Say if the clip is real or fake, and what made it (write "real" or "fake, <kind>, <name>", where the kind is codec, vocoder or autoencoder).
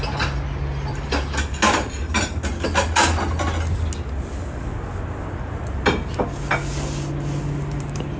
real